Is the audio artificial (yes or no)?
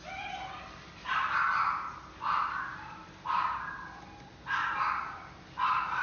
no